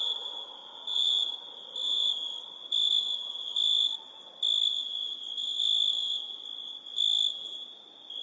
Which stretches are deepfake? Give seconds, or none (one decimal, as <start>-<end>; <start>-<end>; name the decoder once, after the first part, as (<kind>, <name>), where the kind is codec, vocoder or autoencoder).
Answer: 0.6-1.3 (vocoder, Vocos)